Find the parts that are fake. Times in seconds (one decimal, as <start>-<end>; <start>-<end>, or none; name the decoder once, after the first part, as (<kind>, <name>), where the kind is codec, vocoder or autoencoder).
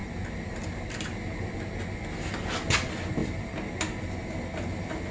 none